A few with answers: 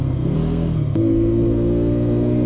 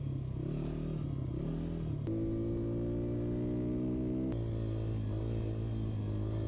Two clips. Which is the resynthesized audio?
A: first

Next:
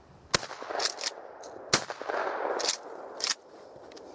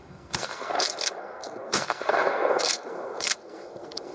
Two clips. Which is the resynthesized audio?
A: second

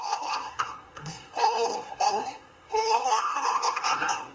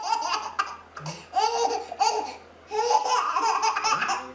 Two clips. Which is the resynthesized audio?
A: first